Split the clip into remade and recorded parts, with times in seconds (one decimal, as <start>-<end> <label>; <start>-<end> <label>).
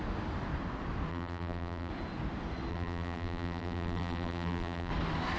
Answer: 0.0-1.1 recorded; 1.1-1.9 remade; 1.9-2.7 recorded; 2.7-4.9 remade; 4.9-5.4 recorded